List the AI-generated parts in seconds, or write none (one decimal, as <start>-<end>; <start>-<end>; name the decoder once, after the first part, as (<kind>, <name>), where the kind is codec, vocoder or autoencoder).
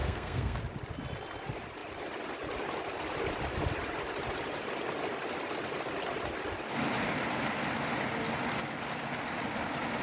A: 0.0-0.6 (codec, SNAC)